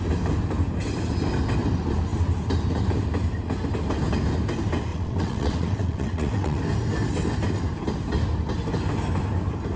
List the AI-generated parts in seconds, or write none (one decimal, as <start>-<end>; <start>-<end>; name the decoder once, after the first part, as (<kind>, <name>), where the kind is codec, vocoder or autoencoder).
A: 4.9-6.6 (vocoder, WaveNeXt)